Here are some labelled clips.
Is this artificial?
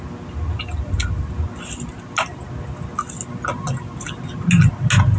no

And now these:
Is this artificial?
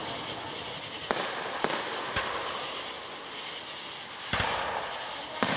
no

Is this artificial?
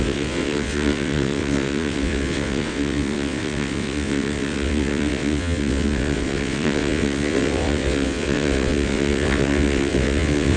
yes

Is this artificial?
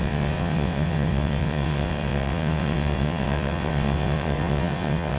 yes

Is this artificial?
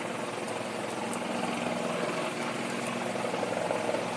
no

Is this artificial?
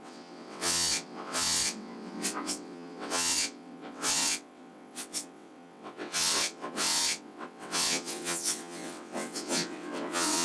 yes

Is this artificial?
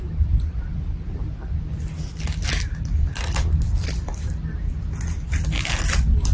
no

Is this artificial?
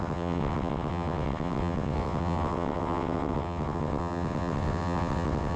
yes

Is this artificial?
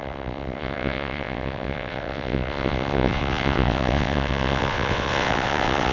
yes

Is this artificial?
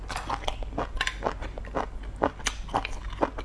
no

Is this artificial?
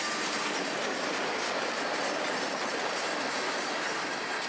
no